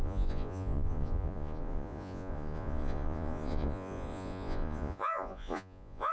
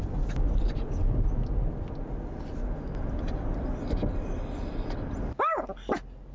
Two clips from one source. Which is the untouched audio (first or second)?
second